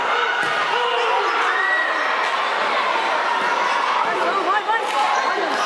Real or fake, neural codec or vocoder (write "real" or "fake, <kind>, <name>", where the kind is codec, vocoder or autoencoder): real